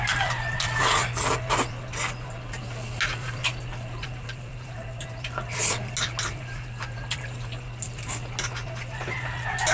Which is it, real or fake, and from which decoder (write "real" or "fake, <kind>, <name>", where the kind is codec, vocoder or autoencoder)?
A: real